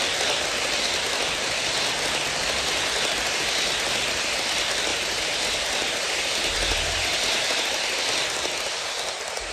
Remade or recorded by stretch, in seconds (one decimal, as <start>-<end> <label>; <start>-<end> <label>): 0.0-4.9 recorded; 4.9-7.8 remade; 7.8-9.5 recorded